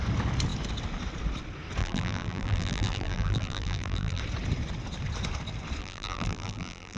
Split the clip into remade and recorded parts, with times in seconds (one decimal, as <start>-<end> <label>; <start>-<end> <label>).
0.0-1.8 recorded; 1.8-4.2 remade; 4.2-5.8 recorded; 5.8-7.0 remade